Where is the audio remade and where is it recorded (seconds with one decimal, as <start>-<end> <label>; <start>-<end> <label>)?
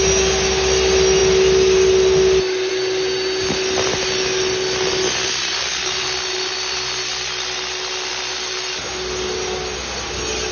0.0-10.5 recorded